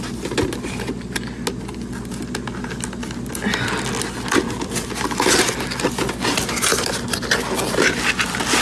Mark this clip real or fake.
real